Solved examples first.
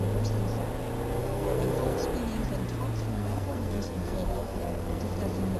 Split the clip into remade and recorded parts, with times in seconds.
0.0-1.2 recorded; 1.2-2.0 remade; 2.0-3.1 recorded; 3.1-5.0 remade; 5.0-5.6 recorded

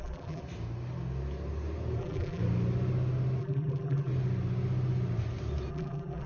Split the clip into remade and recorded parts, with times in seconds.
0.0-0.4 remade; 0.4-2.0 recorded; 2.0-2.4 remade; 2.4-3.4 recorded; 3.4-4.1 remade; 4.1-5.7 recorded; 5.7-6.3 remade

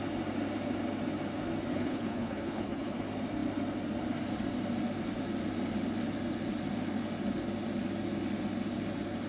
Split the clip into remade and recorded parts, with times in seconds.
0.0-1.7 recorded; 1.7-3.0 remade; 3.0-9.3 recorded

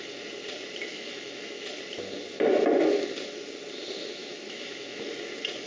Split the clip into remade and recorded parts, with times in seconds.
0.0-0.9 recorded; 0.9-1.8 remade; 1.8-4.2 recorded; 4.2-5.1 remade; 5.1-5.7 recorded

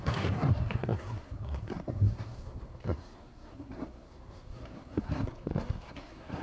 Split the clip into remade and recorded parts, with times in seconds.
0.0-6.4 remade

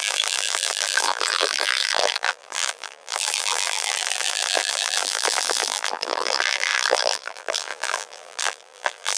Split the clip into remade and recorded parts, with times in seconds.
0.0-9.2 remade